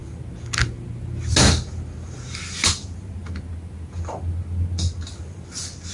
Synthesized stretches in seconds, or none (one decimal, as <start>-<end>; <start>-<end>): none